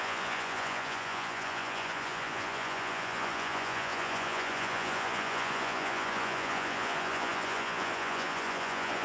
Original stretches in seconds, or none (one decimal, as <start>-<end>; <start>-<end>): none